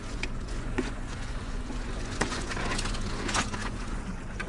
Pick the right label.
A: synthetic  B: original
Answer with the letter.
A